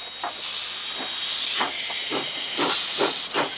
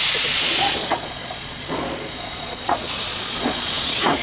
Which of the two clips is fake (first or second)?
second